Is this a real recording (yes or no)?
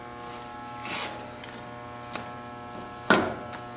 yes